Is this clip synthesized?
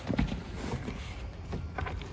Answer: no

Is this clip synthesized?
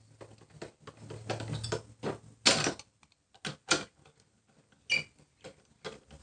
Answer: no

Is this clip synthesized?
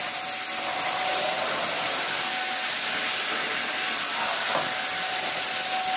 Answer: no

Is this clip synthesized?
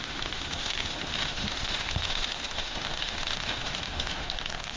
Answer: yes